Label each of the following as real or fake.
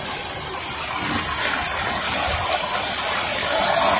real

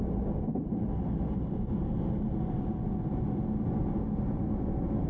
real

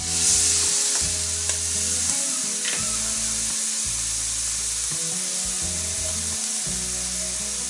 real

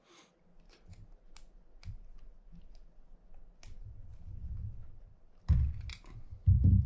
real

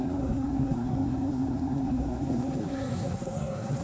fake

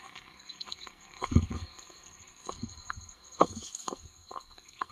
fake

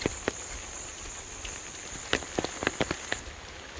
real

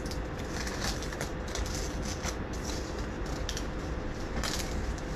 real